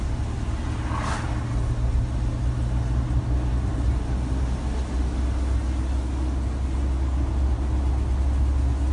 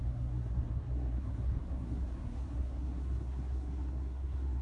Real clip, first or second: first